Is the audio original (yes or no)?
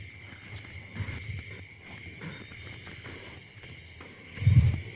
yes